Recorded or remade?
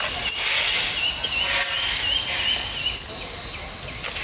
recorded